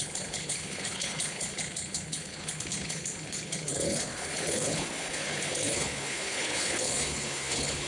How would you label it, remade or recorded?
remade